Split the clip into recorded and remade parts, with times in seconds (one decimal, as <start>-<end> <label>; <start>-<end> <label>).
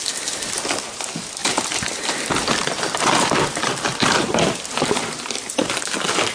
0.0-1.4 recorded; 1.4-5.2 remade; 5.2-6.3 recorded